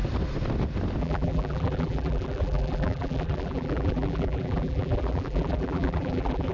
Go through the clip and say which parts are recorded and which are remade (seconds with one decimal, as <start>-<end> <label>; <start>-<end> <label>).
0.0-1.0 recorded; 1.0-6.5 remade